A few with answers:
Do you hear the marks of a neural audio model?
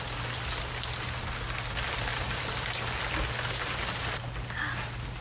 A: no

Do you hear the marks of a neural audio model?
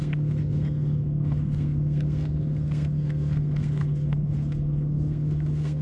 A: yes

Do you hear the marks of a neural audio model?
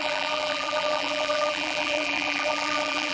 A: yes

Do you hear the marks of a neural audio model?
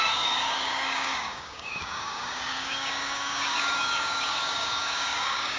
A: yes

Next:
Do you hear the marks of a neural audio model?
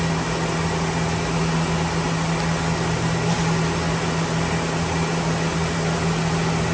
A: no